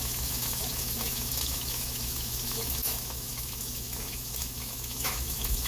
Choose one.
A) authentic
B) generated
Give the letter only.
B